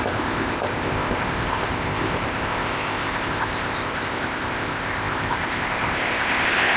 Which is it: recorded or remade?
remade